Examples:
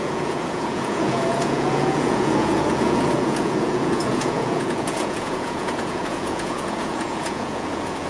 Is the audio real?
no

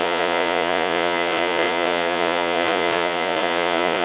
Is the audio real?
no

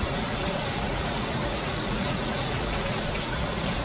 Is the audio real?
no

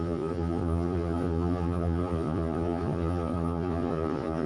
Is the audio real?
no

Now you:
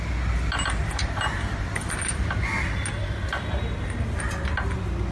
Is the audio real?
yes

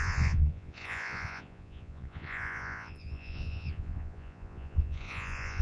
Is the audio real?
no